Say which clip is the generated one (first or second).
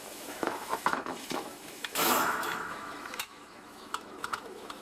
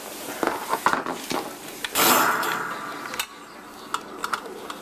first